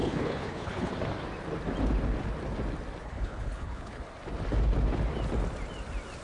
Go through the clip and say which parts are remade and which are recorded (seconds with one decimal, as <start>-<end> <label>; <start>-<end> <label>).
0.0-0.9 remade; 0.9-3.0 recorded; 3.0-4.0 remade; 4.0-6.2 recorded